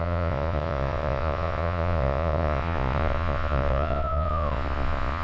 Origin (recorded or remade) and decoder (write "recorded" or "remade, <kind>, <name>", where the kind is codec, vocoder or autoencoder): remade, vocoder, Vocos